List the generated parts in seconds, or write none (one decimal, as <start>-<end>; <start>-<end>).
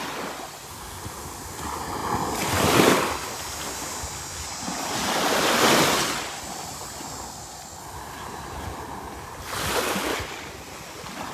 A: none